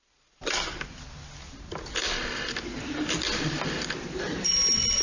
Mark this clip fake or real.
real